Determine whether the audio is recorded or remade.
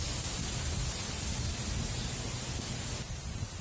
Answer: recorded